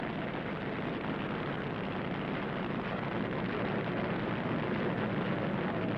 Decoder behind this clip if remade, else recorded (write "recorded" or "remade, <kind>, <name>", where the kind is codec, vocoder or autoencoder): recorded